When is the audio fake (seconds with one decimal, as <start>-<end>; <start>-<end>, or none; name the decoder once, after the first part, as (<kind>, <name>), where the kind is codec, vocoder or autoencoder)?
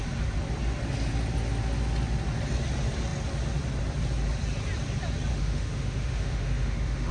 5.3-7.1 (autoencoder, DAC-VAE)